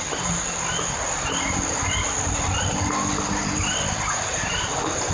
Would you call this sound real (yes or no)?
yes